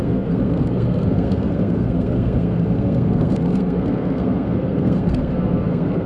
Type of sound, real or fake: fake